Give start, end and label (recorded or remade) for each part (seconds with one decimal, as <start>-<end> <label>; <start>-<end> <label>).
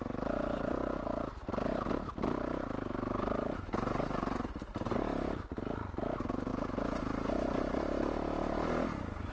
0.0-9.3 recorded